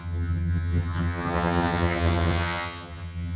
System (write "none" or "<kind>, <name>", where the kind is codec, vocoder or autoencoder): vocoder, HiFi-GAN